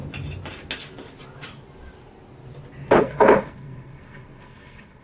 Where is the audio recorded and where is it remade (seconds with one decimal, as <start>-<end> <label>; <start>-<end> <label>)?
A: 0.0-3.0 recorded; 3.0-5.0 remade